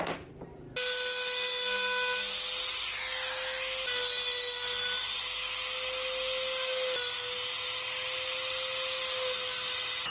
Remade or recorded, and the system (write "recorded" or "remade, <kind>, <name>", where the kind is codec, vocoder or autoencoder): recorded